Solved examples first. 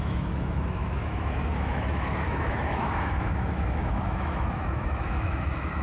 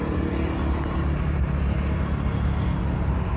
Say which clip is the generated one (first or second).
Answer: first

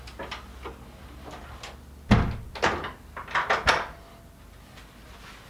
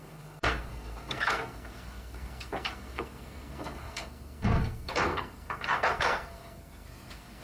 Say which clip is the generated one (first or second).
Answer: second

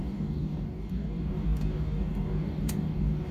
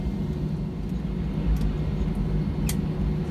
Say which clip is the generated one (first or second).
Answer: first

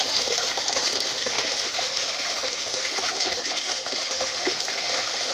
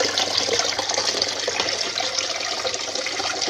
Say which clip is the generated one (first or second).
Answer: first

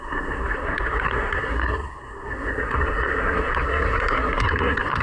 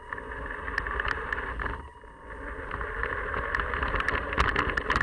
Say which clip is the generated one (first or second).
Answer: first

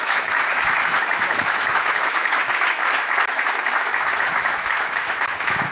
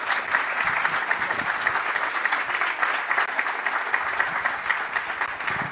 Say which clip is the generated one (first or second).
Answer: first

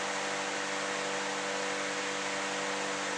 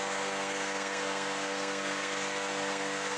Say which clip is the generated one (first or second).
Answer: second